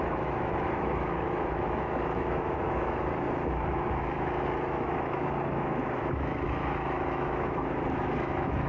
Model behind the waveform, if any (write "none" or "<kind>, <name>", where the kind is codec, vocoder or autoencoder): autoencoder, DAC-VAE